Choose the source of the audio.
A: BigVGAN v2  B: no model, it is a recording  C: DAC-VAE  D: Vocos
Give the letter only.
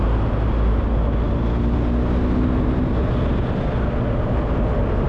B